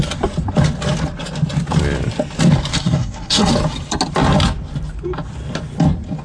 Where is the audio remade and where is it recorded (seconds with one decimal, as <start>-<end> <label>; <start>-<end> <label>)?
0.0-2.7 recorded; 2.7-3.5 remade; 3.5-6.2 recorded